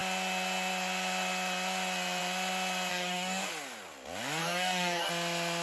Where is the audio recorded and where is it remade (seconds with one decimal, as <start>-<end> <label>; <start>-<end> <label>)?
0.0-2.9 recorded; 2.9-3.5 remade; 3.5-4.4 recorded; 4.4-5.1 remade; 5.1-5.6 recorded

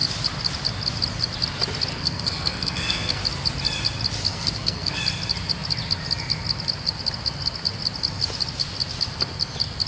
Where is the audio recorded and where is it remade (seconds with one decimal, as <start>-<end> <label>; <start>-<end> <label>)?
0.0-1.9 recorded; 1.9-3.2 remade; 3.2-4.3 recorded; 4.3-5.0 remade; 5.0-9.9 recorded

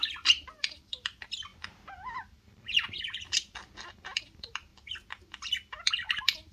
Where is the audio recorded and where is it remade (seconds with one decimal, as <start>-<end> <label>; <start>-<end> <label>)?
0.0-1.5 remade; 1.5-4.2 recorded; 4.2-4.7 remade; 4.7-5.9 recorded; 5.9-6.5 remade